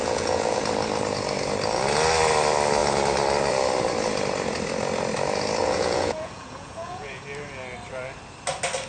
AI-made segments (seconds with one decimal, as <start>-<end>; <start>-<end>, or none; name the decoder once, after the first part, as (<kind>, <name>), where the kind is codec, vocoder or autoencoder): 0.0-0.6 (vocoder, Vocos); 5.6-7.2